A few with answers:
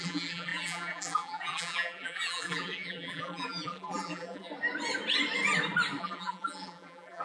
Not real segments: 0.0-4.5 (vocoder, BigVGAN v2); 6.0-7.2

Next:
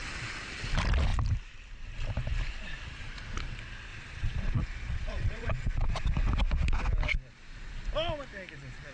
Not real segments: 3.9-6.0 (vocoder, Vocos)

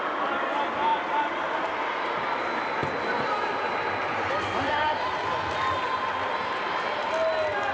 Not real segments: none

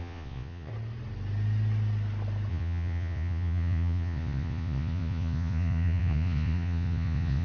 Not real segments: 0.0-0.7 (vocoder, Vocos); 2.5-7.4

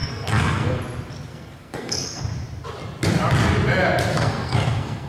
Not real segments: 0.0-0.8 (codec, SNAC); 1.3-2.2; 4.1-5.1

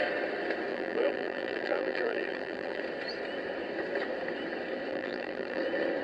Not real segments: 0.7-2.8 (vocoder, BigVGAN v2); 4.9-5.6